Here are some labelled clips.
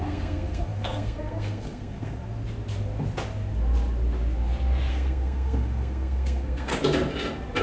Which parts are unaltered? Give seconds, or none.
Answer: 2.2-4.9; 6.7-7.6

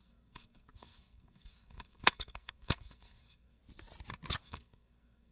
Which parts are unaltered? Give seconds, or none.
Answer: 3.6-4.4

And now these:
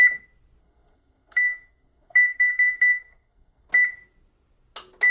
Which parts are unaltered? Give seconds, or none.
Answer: 0.0-0.6; 3.7-5.1

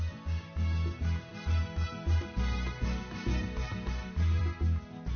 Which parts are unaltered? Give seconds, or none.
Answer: 0.0-5.2

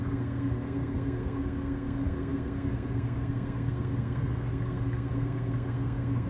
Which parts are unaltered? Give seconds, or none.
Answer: none